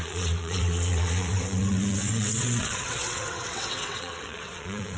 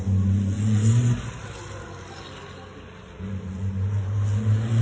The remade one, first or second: first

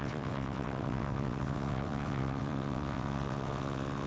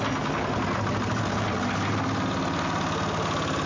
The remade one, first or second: first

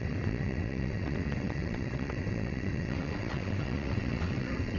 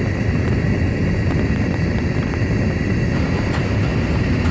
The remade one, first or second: first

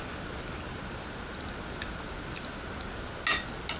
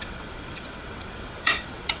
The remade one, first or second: second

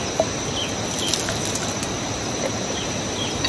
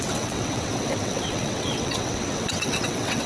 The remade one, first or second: second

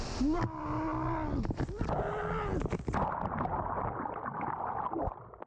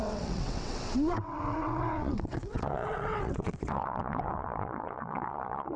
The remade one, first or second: second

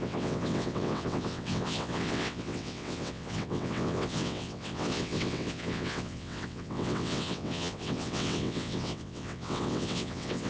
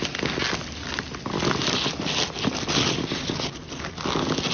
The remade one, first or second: first